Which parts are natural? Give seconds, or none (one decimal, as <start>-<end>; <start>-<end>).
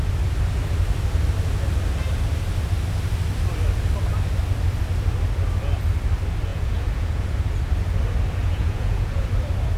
0.0-6.5; 7.3-8.4; 9.3-9.8